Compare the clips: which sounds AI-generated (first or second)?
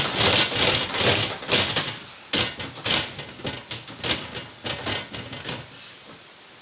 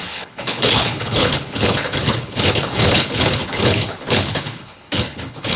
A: second